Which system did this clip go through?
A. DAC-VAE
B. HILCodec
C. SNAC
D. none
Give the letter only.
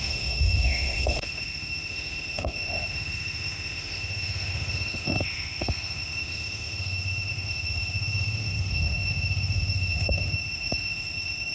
A